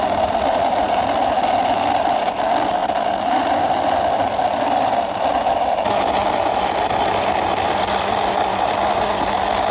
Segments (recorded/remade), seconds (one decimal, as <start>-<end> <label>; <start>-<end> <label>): 0.0-9.7 recorded